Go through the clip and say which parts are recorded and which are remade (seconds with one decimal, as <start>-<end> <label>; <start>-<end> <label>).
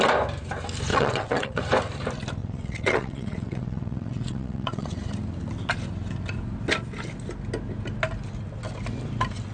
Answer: 0.0-0.9 recorded; 0.9-1.6 remade; 1.6-2.4 recorded; 2.4-5.1 remade; 5.1-9.5 recorded